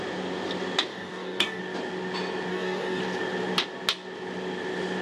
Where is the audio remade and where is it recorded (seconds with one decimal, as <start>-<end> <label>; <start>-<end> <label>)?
0.0-0.9 recorded; 0.9-1.6 remade; 1.6-2.5 recorded; 2.5-3.0 remade; 3.0-5.0 recorded